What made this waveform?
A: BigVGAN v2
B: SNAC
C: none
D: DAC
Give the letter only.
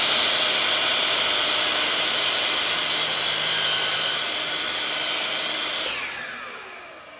C